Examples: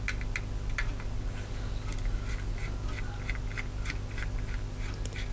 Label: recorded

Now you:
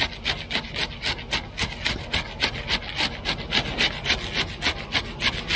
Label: recorded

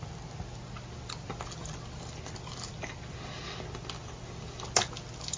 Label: recorded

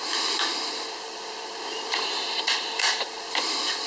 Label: remade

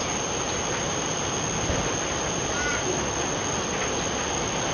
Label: recorded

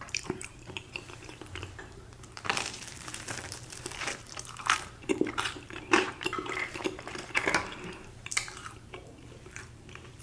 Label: remade